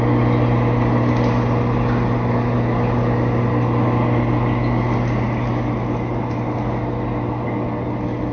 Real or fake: real